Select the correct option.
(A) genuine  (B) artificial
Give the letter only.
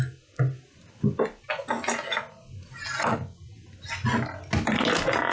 A